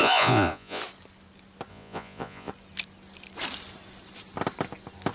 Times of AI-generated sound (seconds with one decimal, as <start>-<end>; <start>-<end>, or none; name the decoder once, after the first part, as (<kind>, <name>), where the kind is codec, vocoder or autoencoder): 0.0-0.8 (vocoder, Vocos); 1.7-2.5